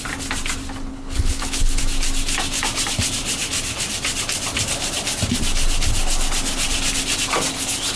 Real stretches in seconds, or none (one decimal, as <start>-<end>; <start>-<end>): 0.0-0.9; 1.8-8.0